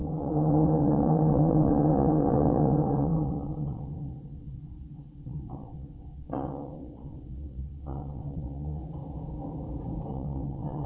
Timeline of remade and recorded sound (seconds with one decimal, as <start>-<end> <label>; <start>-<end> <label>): 0.0-8.8 remade; 8.8-10.1 recorded; 10.1-10.9 remade